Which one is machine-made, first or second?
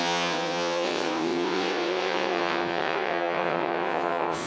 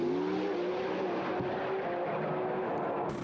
first